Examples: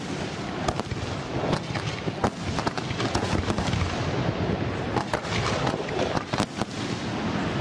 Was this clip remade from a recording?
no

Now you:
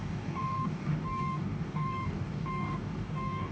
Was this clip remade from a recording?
yes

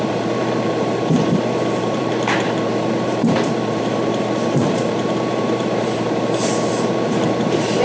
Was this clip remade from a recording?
yes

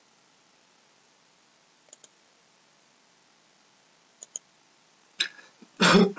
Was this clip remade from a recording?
no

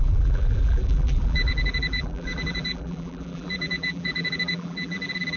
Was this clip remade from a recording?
yes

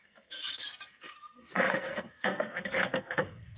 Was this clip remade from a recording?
yes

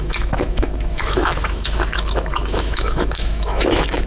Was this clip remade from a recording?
yes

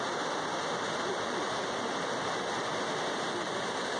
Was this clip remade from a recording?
no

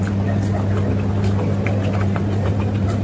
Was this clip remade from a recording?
no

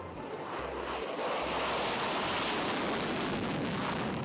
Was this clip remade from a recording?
no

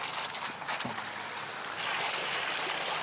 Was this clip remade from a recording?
no